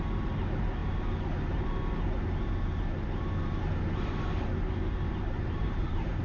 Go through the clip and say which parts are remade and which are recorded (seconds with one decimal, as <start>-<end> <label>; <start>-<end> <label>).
0.0-5.2 recorded; 5.2-6.2 remade